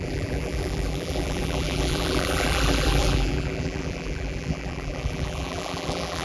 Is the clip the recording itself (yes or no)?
no